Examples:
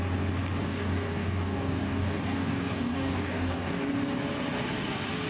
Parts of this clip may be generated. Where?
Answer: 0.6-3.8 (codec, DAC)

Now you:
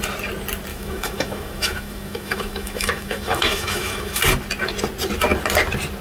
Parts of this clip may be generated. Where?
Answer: 0.7-4.2 (autoencoder, DAC-VAE)

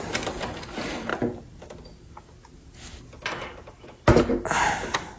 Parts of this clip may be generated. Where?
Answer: none

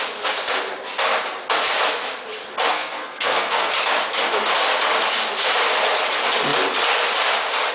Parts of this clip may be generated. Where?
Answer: 2.7-3.7 (codec, SNAC)

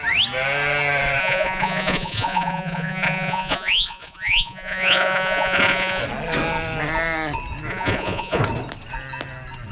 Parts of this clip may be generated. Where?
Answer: 1.2-6.0 (vocoder, Vocos); 7.7-8.4

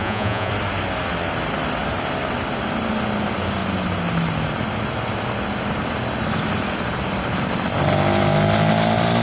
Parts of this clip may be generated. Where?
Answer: 0.0-0.5 (vocoder, Vocos)